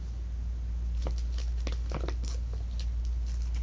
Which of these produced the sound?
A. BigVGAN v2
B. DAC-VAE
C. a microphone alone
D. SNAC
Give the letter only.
C